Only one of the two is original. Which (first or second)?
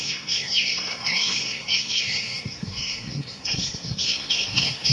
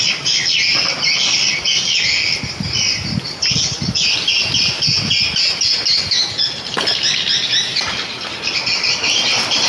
second